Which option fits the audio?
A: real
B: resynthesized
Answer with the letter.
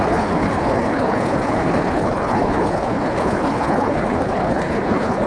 B